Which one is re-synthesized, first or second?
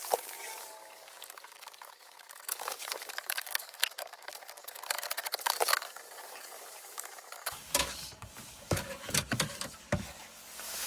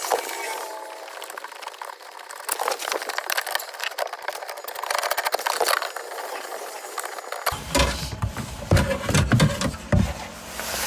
first